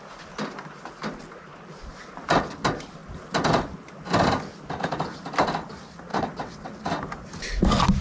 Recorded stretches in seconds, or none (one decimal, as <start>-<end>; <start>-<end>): 0.0-6.1; 6.8-8.0